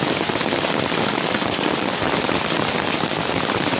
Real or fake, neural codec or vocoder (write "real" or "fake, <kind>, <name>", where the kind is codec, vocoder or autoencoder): fake, vocoder, BigVGAN v2